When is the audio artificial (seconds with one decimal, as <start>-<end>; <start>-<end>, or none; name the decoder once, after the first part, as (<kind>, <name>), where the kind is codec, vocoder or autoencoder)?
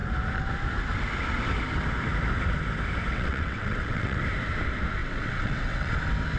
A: 3.1-4.2 (vocoder, WaveNeXt); 5.0-6.0